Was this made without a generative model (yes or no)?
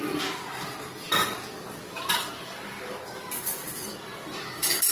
yes